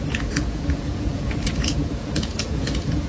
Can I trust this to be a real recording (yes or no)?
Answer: no